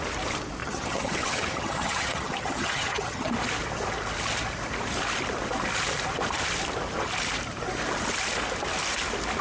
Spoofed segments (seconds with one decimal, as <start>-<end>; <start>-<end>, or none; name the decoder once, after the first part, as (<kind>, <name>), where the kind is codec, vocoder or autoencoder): 0.6-3.3 (vocoder, HiFi-GAN)